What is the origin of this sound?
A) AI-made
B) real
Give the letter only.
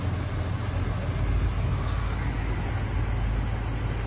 B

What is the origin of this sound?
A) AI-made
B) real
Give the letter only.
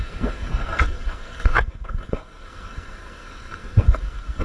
A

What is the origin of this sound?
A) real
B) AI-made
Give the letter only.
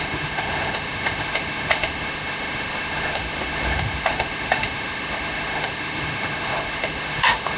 B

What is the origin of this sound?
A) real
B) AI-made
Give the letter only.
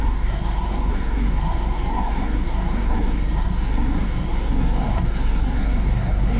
B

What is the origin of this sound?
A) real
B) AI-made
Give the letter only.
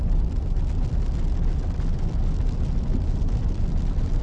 A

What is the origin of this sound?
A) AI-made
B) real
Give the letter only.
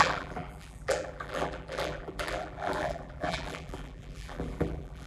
A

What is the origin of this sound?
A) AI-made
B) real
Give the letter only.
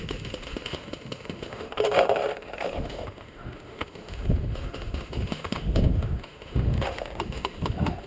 A